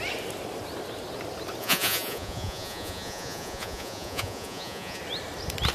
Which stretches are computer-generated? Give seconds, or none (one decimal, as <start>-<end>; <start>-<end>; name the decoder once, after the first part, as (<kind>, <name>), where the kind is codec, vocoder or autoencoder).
1.6-5.0 (vocoder, Vocos)

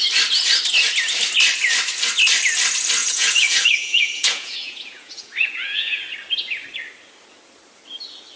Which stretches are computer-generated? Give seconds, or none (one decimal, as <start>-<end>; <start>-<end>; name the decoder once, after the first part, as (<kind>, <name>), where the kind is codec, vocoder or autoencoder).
3.0-6.0 (vocoder, Vocos)